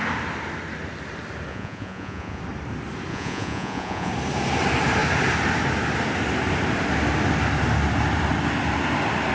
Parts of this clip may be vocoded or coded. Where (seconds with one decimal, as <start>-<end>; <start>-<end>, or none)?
1.5-2.4; 3.1-4.1